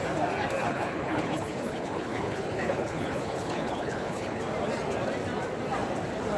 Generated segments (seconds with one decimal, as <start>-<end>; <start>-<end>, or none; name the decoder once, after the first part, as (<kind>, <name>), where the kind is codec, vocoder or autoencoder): 0.6-4.4 (codec, HILCodec)